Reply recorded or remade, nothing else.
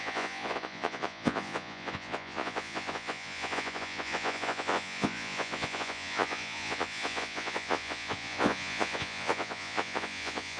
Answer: remade